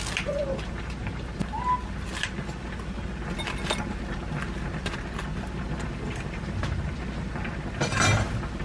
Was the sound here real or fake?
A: real